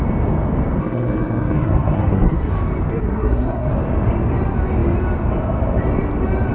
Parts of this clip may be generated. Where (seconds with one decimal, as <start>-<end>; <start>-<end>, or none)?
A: 0.8-2.5; 3.0-3.7

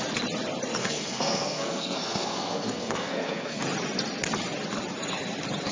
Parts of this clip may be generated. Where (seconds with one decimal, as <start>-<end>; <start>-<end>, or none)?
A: 0.8-3.6

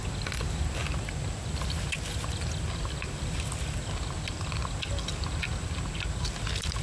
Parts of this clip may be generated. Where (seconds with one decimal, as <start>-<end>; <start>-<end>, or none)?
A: none

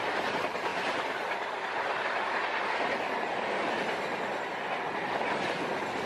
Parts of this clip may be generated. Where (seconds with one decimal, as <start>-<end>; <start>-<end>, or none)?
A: none

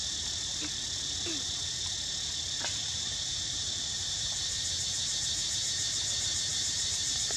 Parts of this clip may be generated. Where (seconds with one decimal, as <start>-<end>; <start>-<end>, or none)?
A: 0.0-0.6; 2.8-4.6; 6.5-7.4

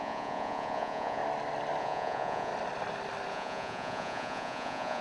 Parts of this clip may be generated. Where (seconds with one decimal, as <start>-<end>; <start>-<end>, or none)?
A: 0.0-1.2; 1.8-2.5; 3.3-5.0

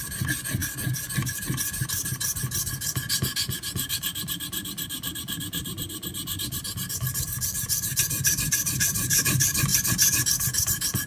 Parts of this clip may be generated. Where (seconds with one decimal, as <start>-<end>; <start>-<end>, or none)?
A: none

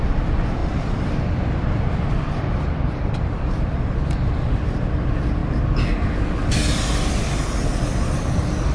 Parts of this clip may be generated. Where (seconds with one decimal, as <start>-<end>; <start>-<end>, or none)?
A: 0.6-4.9